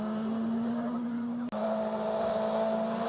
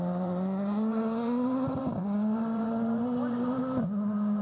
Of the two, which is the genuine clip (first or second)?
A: first